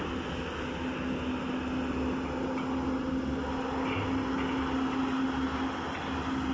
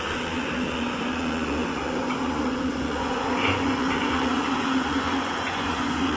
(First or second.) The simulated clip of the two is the second